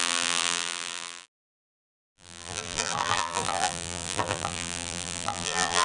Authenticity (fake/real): fake